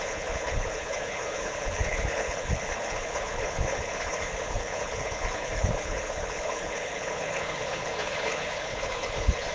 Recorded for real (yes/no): no